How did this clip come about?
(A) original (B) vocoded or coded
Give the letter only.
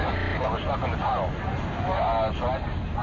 A